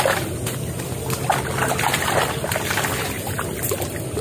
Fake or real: real